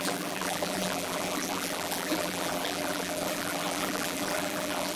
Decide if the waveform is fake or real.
fake